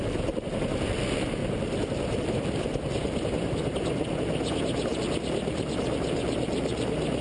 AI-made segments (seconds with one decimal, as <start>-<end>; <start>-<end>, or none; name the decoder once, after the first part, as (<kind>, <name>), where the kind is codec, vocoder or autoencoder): 1.4-3.5 (vocoder, BigVGAN v2); 4.9-5.7